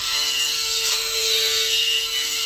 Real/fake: fake